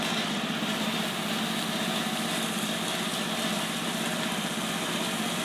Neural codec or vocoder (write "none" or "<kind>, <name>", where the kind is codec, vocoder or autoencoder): none